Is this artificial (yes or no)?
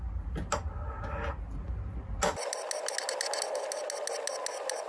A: no